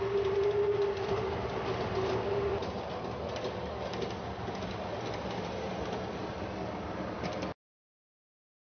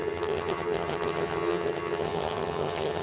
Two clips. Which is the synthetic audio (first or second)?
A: second